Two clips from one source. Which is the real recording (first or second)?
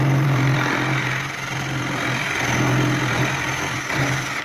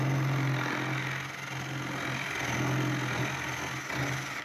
second